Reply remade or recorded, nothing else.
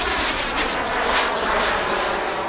recorded